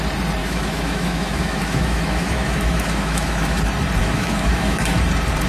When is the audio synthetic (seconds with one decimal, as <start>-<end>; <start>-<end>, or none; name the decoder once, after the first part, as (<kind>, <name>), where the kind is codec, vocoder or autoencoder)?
0.4-3.6 (autoencoder, DAC-VAE); 4.0-5.0